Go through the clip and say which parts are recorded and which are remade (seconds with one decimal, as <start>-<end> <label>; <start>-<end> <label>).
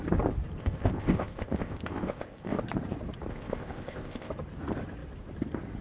0.0-0.6 recorded; 0.6-2.6 remade; 2.6-3.3 recorded; 3.3-4.3 remade; 4.3-5.8 recorded